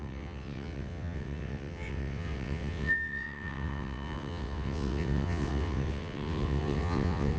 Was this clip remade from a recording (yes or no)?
yes